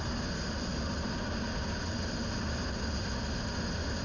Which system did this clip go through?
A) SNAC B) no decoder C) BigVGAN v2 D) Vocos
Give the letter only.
B